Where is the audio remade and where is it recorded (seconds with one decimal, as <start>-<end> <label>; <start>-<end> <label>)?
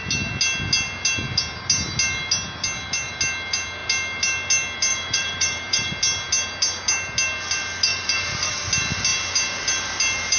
0.0-4.9 recorded; 4.9-5.9 remade; 5.9-7.9 recorded; 7.9-8.5 remade; 8.5-10.4 recorded